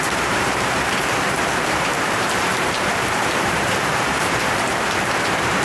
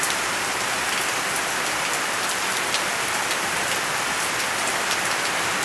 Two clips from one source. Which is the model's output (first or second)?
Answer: first